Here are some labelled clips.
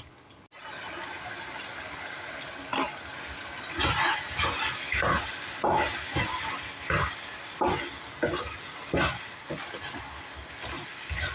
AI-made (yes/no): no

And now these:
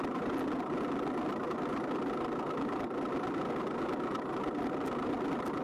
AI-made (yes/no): no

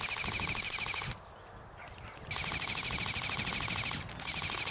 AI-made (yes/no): no